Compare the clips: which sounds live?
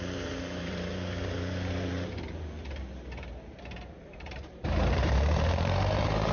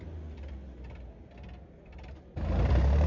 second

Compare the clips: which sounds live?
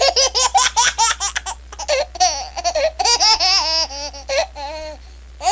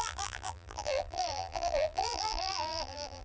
first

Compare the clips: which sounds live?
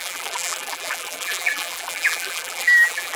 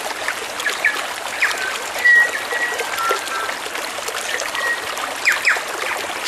second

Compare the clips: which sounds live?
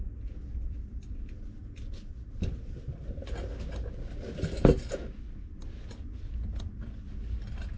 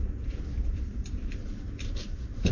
first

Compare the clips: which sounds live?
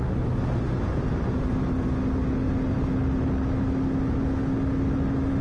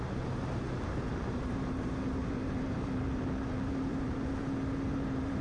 first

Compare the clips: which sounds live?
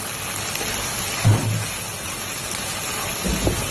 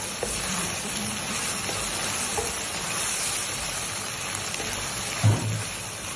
first